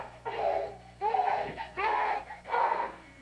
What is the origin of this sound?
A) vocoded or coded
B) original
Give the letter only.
A